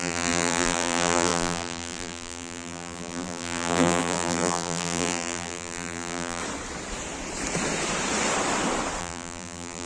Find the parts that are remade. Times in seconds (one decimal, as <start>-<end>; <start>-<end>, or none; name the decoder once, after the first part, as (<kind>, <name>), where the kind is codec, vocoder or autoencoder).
0.0-6.4 (vocoder, BigVGAN v2); 9.0-9.9